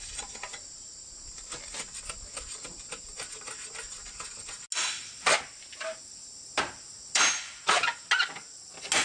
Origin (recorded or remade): recorded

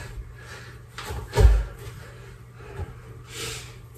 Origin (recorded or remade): recorded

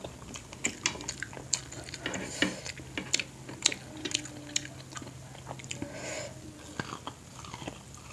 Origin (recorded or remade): recorded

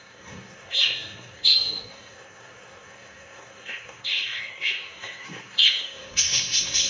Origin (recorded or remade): remade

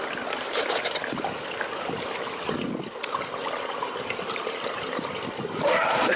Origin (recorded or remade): recorded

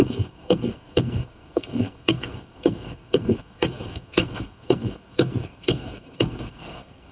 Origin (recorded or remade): remade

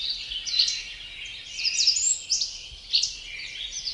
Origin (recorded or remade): recorded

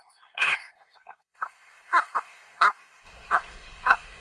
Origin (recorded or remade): remade